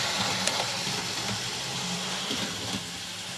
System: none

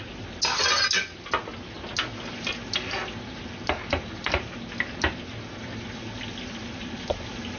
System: none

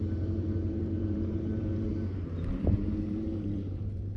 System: vocoder, BigVGAN v2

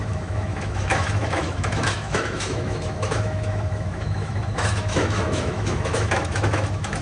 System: autoencoder, DAC-VAE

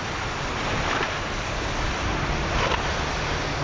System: none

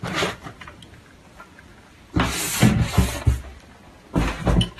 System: none